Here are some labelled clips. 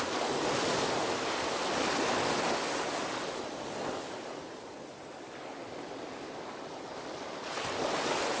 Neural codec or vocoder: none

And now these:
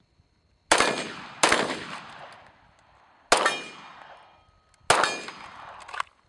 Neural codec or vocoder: none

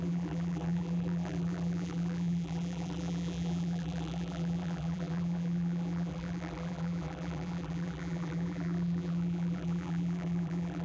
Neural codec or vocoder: vocoder, BigVGAN v2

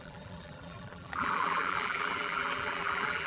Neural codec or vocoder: vocoder, BigVGAN v2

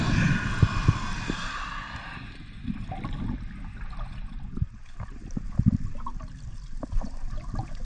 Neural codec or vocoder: none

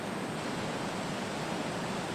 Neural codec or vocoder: none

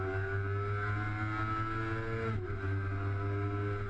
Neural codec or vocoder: none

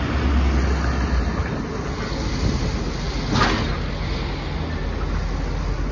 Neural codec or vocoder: none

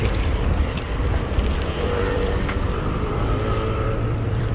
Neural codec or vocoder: vocoder, BigVGAN v2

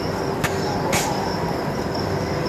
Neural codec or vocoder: none